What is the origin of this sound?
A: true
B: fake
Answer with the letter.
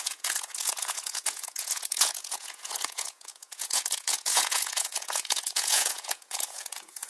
B